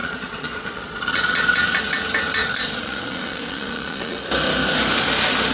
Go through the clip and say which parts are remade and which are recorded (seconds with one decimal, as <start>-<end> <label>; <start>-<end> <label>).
0.0-1.8 remade; 1.8-2.4 recorded; 2.4-4.2 remade; 4.2-5.5 recorded